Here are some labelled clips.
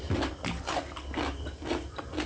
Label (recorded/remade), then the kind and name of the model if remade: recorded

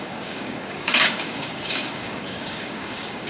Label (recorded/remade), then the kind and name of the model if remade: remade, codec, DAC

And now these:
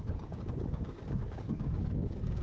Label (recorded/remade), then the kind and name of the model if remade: remade, codec, DAC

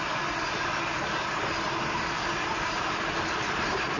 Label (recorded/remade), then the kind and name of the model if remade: recorded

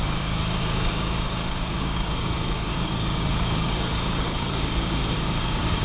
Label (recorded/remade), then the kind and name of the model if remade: remade, codec, DAC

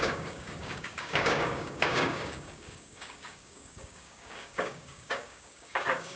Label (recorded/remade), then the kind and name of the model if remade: remade, codec, DAC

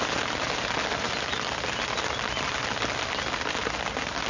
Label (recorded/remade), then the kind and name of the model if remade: recorded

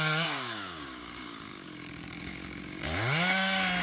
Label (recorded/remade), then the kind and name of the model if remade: remade, codec, DAC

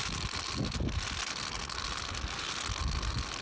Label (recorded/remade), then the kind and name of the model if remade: recorded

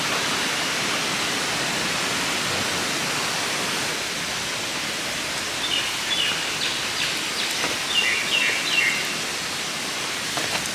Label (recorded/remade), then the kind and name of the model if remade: recorded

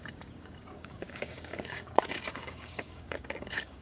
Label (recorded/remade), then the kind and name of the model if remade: remade, codec, DAC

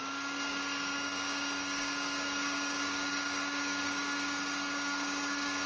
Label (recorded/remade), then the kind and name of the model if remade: remade, codec, DAC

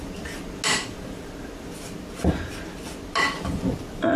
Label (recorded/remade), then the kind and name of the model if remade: recorded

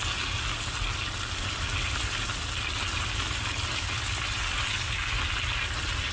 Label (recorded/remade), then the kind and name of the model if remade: recorded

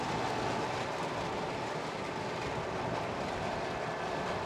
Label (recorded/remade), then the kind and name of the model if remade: recorded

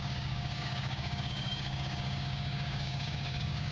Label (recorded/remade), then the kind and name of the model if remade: remade, codec, DAC